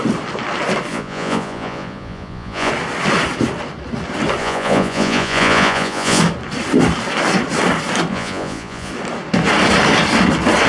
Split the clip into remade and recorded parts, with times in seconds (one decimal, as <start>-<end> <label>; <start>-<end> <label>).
0.0-0.9 recorded; 0.9-2.7 remade; 2.7-4.4 recorded; 4.4-6.2 remade; 6.2-8.1 recorded; 8.1-8.9 remade; 8.9-10.7 recorded